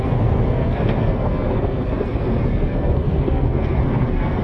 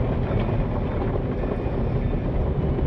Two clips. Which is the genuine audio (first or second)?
second